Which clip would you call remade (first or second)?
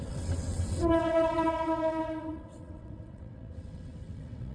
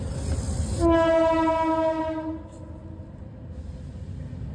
first